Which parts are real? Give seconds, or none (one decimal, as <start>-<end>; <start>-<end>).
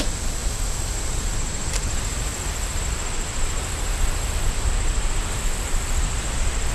0.4-1.3